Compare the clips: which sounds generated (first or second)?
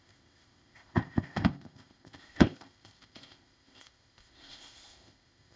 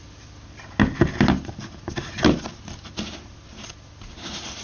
first